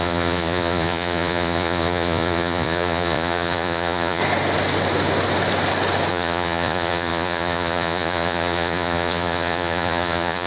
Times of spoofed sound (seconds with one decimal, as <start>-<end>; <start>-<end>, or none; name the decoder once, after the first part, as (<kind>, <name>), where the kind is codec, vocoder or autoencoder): 0.0-4.2 (vocoder, Vocos); 6.1-10.5